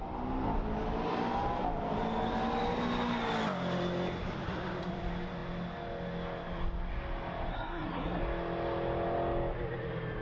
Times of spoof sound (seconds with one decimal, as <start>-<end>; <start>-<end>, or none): 7.5-8.2